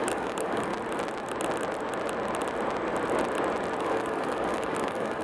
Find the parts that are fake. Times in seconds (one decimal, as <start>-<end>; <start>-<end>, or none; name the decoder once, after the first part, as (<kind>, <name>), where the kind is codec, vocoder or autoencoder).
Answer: 0.0-0.7 (codec, DAC); 3.8-5.2